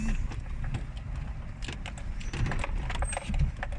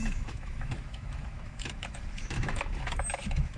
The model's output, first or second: second